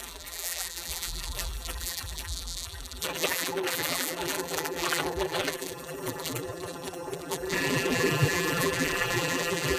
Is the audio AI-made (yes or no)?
yes